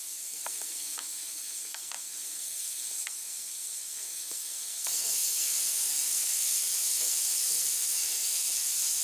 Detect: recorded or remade remade